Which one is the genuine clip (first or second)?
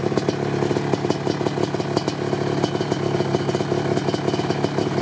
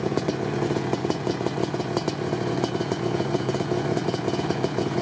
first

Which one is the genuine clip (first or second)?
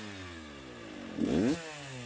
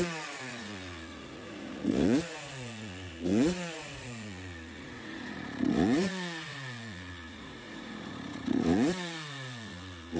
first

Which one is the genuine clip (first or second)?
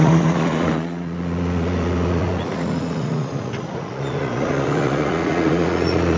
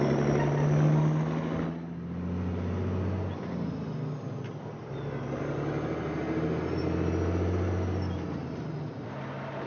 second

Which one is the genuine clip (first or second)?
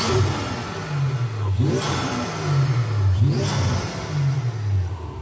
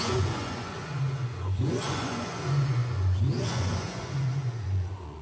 first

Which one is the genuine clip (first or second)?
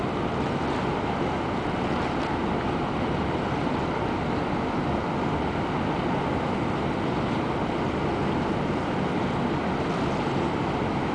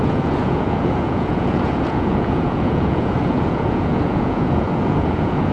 first